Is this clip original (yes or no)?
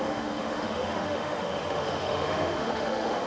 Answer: no